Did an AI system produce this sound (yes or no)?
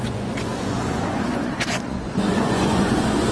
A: yes